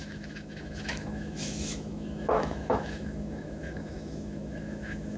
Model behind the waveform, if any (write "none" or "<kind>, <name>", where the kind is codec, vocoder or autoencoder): autoencoder, DAC-VAE